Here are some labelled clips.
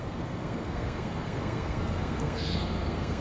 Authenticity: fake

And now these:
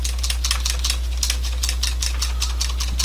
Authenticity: real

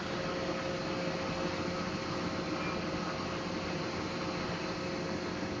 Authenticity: real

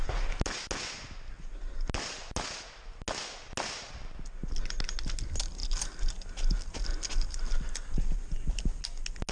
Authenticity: real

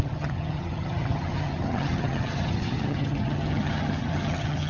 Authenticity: fake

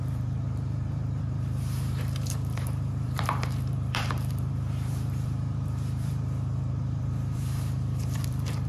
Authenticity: fake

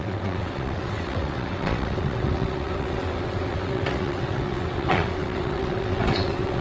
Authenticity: fake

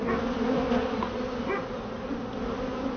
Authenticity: real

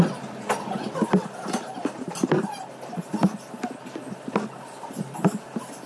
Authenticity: real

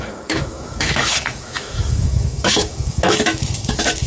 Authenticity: fake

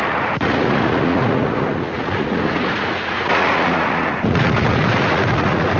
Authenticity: fake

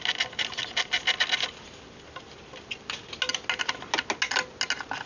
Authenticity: real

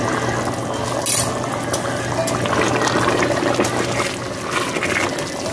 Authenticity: real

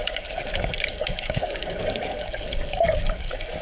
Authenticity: fake